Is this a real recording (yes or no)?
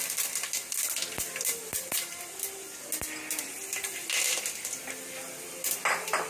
yes